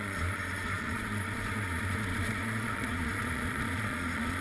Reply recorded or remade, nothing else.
remade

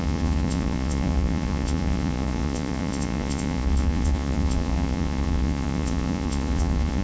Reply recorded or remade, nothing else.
remade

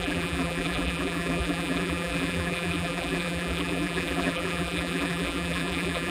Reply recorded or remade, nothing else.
remade